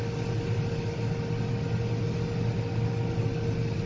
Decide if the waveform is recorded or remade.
recorded